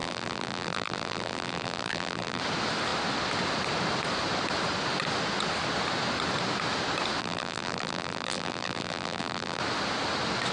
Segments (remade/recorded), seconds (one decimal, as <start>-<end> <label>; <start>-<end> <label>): 0.0-2.4 remade; 2.4-7.2 recorded; 7.2-9.6 remade; 9.6-10.5 recorded